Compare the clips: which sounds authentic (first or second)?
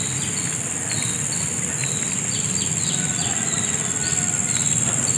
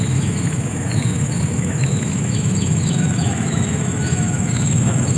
first